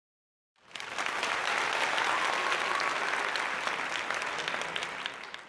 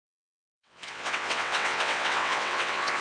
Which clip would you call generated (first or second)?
second